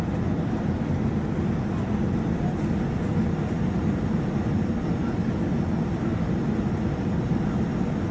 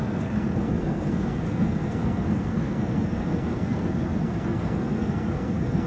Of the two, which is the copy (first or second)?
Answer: second